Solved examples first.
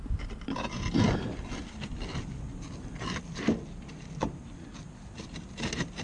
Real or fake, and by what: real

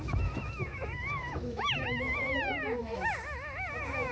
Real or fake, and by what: fake, autoencoder, DAC-VAE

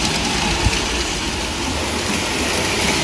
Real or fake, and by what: real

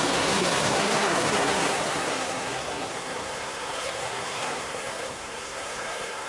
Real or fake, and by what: fake, codec, SNAC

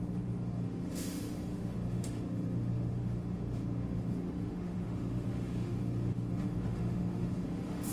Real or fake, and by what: fake, autoencoder, DAC-VAE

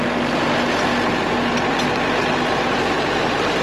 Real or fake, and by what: real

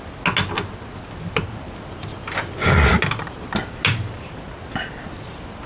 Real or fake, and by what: real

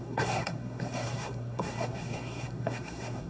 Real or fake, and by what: fake, codec, SNAC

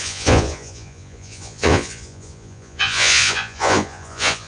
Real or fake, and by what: fake, vocoder, Vocos